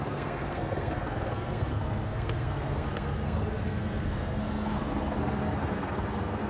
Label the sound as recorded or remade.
remade